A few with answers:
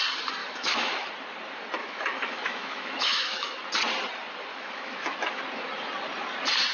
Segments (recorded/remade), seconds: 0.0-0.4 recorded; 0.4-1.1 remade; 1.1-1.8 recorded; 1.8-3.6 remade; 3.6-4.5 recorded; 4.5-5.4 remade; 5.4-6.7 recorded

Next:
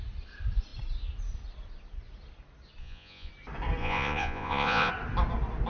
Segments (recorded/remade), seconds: 0.0-2.8 recorded; 2.8-3.3 remade; 3.3-3.8 recorded; 3.8-4.9 remade; 4.9-5.7 recorded

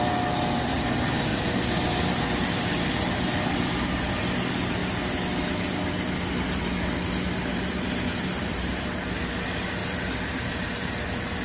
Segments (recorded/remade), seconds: 0.0-1.3 recorded; 1.3-2.4 remade; 2.4-8.3 recorded; 8.3-8.9 remade; 8.9-9.8 recorded; 9.8-10.7 remade; 10.7-11.4 recorded

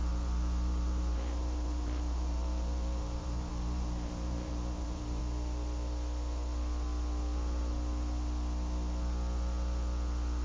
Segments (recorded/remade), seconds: 0.0-5.2 remade; 5.2-10.4 recorded